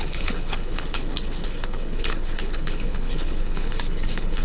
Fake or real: fake